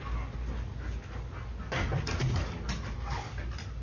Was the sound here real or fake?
real